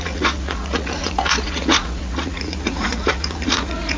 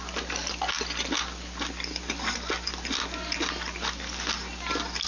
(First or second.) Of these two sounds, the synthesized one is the first